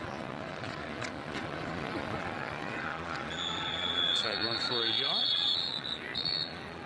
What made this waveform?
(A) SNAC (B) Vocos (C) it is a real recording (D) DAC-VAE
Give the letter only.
B